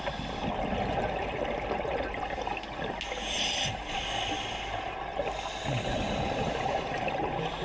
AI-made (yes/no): no